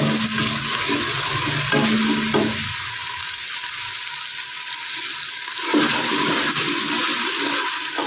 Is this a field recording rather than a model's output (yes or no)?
yes